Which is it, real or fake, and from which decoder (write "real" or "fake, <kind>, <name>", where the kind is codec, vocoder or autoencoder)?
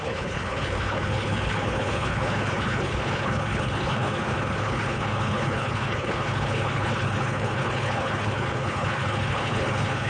fake, codec, HILCodec